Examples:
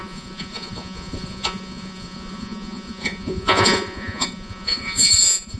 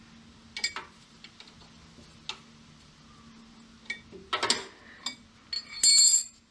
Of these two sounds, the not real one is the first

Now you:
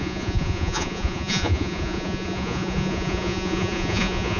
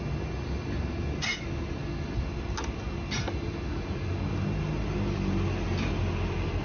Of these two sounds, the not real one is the first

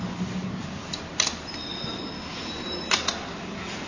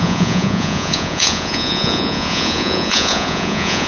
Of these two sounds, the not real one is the second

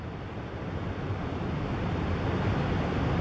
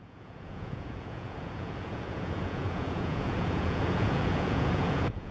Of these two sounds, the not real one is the second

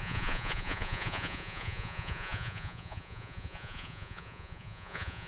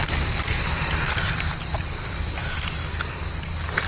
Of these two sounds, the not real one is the first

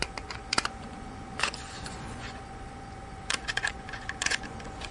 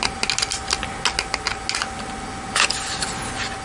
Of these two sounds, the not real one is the first